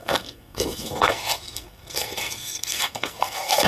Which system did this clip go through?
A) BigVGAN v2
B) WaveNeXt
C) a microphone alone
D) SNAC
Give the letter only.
D